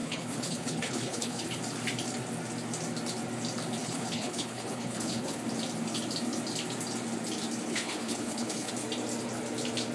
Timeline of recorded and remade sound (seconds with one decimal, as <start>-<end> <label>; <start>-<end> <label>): 0.0-1.6 remade; 1.6-3.8 recorded; 3.8-5.4 remade; 5.4-7.7 recorded; 7.7-8.7 remade; 8.7-9.9 recorded